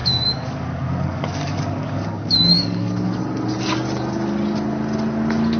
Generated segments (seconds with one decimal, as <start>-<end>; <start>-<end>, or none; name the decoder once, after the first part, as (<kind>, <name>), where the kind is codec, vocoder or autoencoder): 0.0-3.2 (codec, DAC)